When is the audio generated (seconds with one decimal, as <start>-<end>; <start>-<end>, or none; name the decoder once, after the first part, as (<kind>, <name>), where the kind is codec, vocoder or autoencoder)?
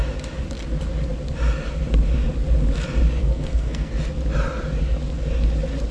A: 3.2-3.9 (codec, SNAC)